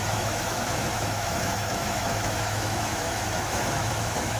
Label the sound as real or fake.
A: fake